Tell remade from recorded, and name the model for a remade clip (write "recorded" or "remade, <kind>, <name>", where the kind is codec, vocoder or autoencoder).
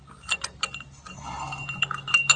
recorded